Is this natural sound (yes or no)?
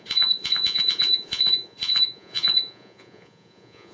no